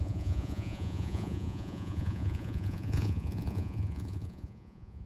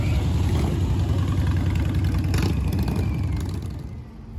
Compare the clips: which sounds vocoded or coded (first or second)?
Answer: first